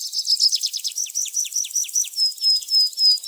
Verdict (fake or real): real